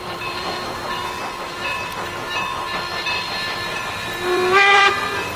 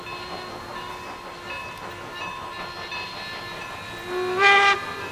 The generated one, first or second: first